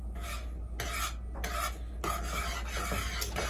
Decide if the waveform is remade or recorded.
recorded